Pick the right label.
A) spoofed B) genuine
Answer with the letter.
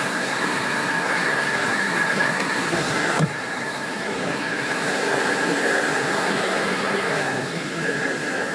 A